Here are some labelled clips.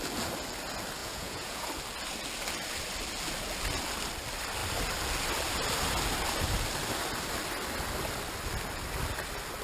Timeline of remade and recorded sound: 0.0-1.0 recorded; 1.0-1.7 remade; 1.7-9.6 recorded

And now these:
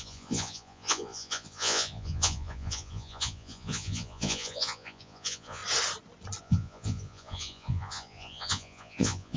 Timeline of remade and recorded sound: 0.0-5.6 remade; 5.6-6.4 recorded; 6.4-9.4 remade

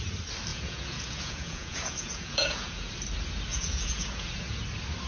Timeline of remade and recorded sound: 0.0-0.5 recorded; 0.5-2.9 remade; 2.9-3.5 recorded; 3.5-4.6 remade; 4.6-5.1 recorded

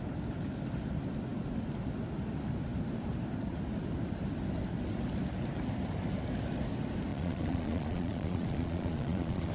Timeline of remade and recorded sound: 0.0-7.1 recorded; 7.1-9.5 remade

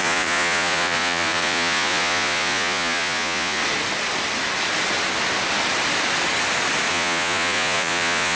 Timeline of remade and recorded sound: 0.0-3.6 remade; 3.6-6.9 recorded; 6.9-8.4 remade

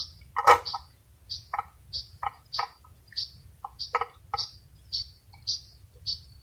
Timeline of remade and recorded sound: 0.0-0.7 recorded; 0.7-3.8 remade; 3.8-6.4 recorded